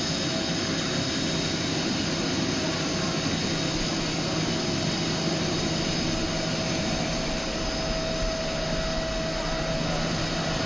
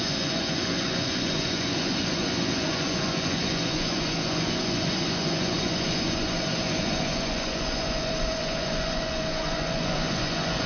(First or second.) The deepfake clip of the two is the second